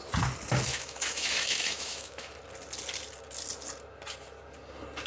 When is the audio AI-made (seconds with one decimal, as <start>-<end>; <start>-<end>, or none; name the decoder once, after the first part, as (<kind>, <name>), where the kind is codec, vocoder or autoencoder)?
0.7-2.3 (autoencoder, DAC-VAE)